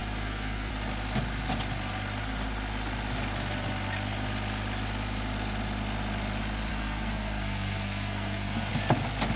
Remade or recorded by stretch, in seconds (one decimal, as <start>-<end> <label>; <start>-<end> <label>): 0.0-0.7 remade; 0.7-6.7 recorded; 6.7-8.7 remade; 8.7-9.4 recorded